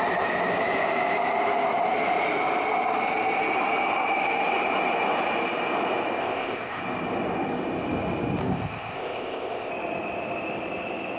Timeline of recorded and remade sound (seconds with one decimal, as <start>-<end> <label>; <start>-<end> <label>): 0.0-6.2 recorded; 6.2-6.8 remade; 6.8-8.4 recorded; 8.4-9.7 remade; 9.7-11.2 recorded